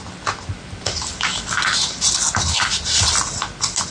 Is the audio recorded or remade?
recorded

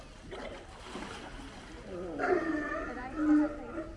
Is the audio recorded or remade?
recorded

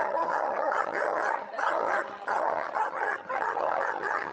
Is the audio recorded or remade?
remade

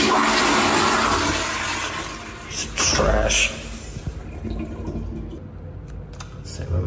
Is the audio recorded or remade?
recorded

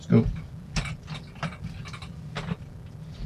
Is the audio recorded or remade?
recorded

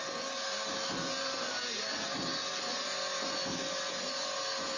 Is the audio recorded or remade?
recorded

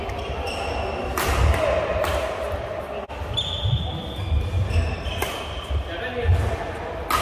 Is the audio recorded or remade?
recorded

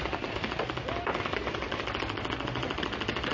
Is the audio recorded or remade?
recorded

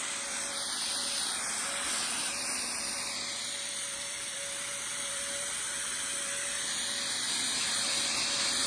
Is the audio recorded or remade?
remade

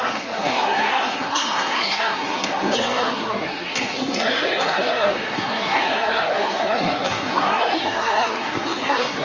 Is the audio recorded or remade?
remade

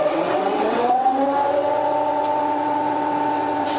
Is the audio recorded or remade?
remade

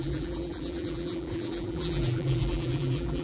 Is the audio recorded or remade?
remade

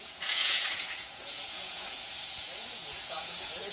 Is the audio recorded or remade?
remade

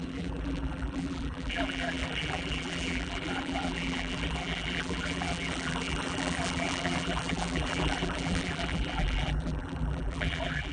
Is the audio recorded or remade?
remade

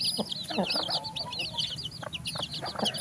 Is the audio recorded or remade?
recorded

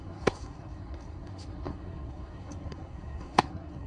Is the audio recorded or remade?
remade